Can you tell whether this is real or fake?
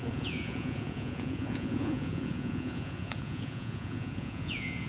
fake